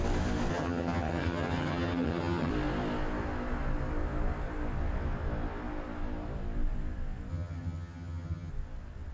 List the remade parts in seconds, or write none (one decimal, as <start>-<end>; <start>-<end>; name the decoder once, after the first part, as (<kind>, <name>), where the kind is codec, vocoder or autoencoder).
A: 0.5-2.5 (vocoder, HiFi-GAN); 7.3-8.5